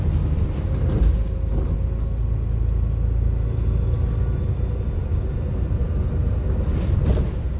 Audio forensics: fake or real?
real